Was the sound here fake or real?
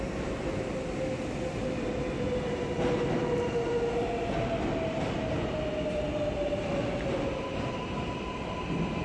real